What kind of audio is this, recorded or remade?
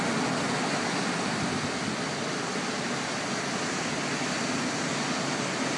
recorded